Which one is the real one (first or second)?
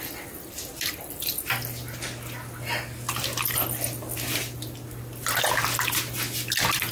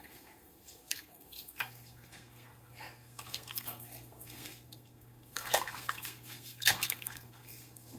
first